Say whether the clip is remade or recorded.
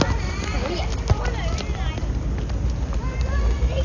recorded